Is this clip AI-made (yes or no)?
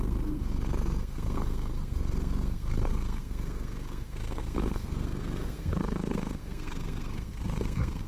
yes